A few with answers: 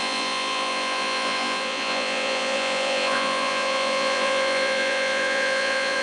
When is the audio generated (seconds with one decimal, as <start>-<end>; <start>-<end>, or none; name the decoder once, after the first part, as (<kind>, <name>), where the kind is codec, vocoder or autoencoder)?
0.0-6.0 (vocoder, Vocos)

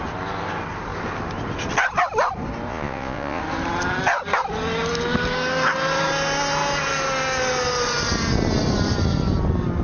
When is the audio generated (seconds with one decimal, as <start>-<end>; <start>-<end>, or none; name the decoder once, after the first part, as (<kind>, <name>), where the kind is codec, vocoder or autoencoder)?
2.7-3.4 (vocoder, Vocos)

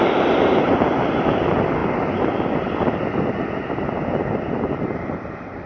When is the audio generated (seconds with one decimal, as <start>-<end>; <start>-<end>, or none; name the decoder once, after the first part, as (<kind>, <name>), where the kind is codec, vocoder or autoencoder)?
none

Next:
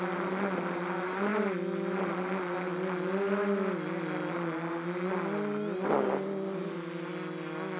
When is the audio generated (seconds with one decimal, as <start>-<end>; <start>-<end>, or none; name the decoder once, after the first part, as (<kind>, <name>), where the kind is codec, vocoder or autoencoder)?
none